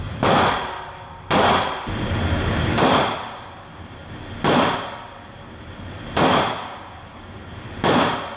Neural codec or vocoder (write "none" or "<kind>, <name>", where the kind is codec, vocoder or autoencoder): none